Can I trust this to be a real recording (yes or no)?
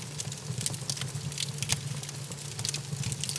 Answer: yes